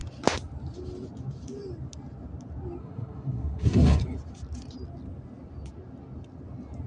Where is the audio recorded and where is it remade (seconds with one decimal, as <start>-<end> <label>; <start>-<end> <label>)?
0.0-2.8 recorded; 2.8-4.0 remade; 4.0-6.9 recorded